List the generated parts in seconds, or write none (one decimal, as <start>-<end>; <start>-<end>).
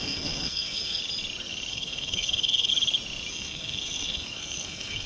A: 0.0-1.0; 1.7-2.7; 3.3-5.1